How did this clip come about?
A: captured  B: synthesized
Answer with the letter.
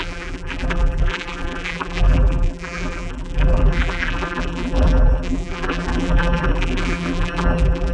B